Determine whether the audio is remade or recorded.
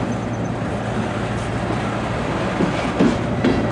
recorded